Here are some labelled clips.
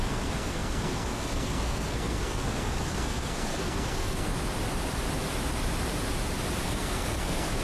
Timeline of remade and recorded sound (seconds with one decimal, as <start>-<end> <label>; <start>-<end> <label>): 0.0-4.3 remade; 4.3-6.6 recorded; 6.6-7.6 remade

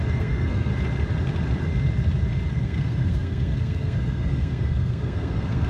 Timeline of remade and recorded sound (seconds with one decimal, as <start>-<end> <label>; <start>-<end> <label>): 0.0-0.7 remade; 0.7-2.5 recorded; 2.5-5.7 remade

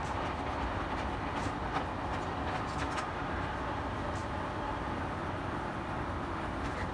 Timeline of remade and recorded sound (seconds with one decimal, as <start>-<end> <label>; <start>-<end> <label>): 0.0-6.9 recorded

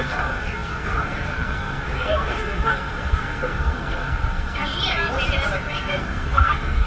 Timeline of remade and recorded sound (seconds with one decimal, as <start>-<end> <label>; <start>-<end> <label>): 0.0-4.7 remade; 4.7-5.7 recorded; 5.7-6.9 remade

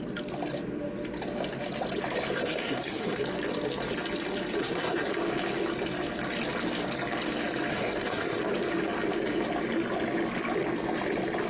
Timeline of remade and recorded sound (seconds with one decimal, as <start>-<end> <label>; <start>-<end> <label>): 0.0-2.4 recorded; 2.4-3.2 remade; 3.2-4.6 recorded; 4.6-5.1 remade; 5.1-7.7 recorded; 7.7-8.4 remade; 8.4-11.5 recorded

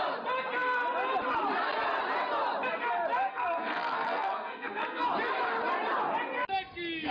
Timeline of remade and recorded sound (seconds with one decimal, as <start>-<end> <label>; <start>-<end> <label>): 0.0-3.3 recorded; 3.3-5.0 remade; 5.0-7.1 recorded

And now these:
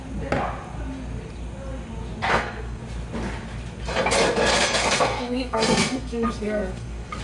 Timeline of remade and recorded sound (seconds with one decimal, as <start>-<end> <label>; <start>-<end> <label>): 0.0-2.3 recorded; 2.3-2.8 remade; 2.8-4.5 recorded; 4.5-7.2 remade

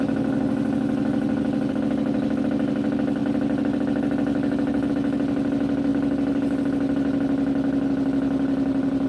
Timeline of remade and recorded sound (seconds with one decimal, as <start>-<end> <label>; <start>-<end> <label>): 0.0-9.1 recorded